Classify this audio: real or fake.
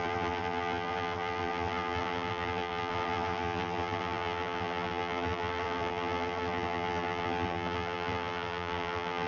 fake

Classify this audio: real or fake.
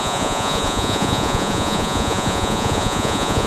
fake